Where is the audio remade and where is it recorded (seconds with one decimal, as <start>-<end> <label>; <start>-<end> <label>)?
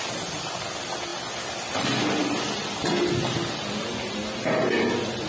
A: 0.0-5.3 recorded